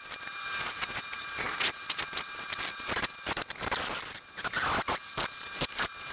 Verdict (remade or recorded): recorded